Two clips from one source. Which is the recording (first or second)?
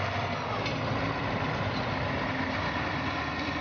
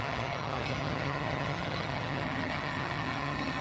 first